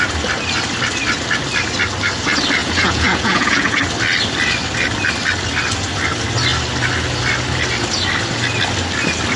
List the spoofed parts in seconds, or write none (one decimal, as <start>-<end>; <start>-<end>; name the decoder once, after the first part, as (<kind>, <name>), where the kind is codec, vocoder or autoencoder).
2.6-3.8 (vocoder, Vocos)